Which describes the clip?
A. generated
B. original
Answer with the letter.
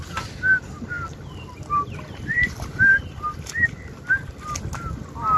B